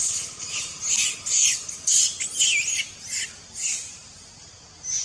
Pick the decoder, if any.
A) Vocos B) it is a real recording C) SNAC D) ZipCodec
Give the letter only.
B